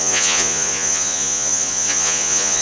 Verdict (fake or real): fake